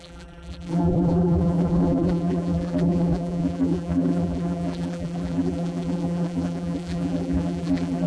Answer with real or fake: fake